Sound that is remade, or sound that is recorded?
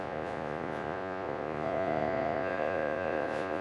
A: remade